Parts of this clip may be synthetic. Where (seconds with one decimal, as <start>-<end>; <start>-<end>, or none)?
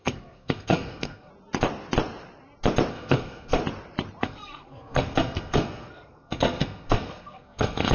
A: 0.0-1.3; 2.9-3.6; 4.2-7.9